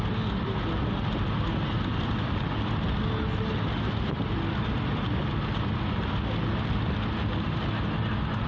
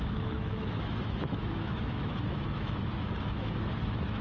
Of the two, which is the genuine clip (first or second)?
first